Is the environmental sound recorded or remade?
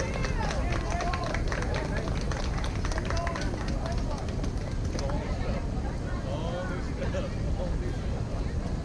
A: recorded